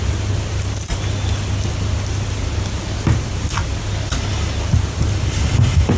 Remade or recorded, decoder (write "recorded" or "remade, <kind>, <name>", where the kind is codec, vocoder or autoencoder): recorded